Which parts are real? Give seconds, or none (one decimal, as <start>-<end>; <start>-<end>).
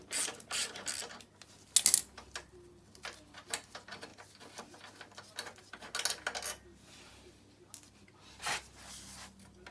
0.0-9.7